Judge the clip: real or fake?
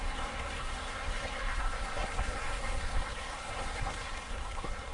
fake